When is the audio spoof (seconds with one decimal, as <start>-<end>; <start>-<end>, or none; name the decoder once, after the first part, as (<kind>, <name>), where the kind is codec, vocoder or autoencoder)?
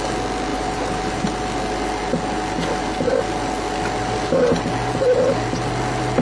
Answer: 0.5-1.2 (vocoder, BigVGAN v2)